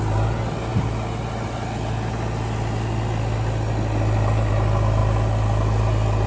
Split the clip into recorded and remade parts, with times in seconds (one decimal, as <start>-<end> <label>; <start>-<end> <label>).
0.0-6.3 recorded